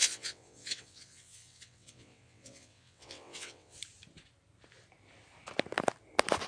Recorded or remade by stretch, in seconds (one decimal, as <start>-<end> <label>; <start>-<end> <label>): 0.0-3.8 remade; 3.8-6.5 recorded